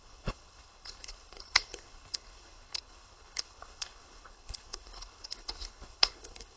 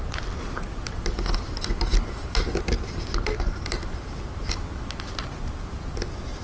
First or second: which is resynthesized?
first